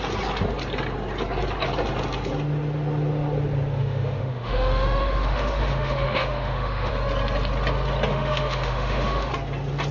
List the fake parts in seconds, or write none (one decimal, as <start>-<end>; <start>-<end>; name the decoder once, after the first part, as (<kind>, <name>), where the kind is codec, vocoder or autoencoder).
3.8-6.9 (autoencoder, DAC-VAE); 8.1-9.3